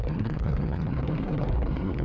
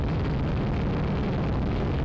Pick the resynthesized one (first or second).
first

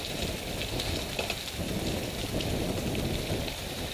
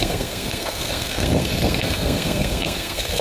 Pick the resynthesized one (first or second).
second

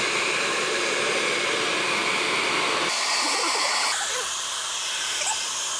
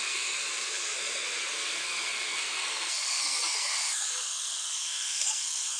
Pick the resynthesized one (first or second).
second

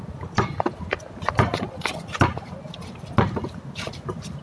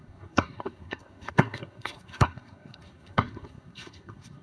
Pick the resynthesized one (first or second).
second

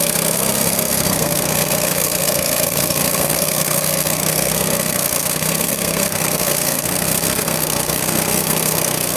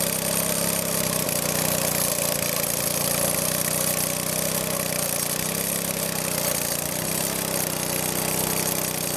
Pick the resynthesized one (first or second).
first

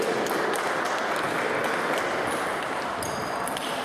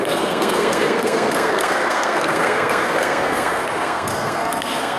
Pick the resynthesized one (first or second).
second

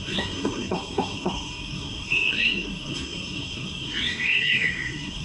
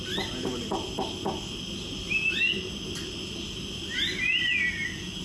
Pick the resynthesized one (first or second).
first